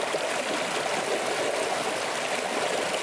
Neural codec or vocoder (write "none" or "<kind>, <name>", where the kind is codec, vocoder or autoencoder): none